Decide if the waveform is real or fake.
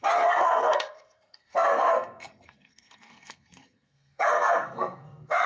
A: fake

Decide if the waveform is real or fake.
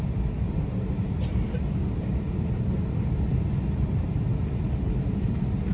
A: fake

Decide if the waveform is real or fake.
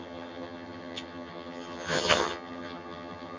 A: fake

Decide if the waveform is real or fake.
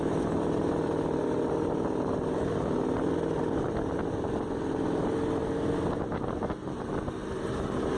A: real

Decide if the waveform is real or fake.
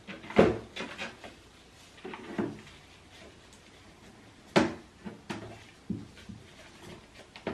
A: real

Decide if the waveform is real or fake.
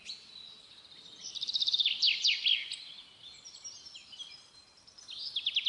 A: real